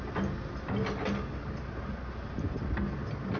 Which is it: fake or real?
real